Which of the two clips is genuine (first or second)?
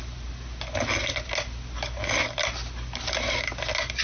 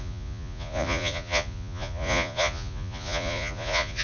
first